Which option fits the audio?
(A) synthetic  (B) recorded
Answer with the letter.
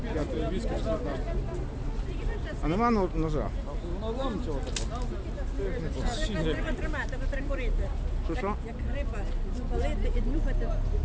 B